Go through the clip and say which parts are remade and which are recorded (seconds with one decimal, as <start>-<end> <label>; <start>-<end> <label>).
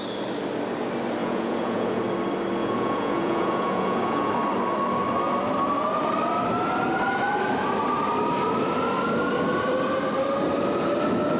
0.0-1.2 recorded; 1.2-2.0 remade; 2.0-2.6 recorded; 2.6-4.3 remade; 4.3-11.4 recorded